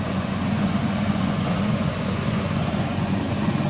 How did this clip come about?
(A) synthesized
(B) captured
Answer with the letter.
A